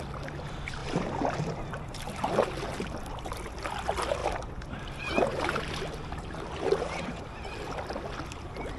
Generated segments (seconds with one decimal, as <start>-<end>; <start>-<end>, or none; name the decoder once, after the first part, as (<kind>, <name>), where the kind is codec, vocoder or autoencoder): 0.8-3.3 (vocoder, BigVGAN v2); 4.2-7.2